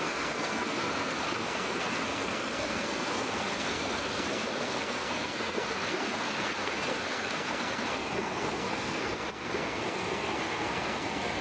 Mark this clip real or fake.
fake